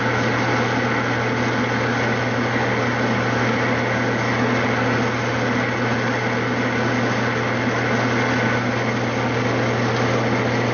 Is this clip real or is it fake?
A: real